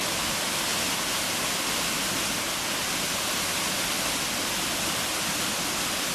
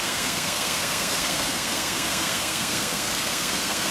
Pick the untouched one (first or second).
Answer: first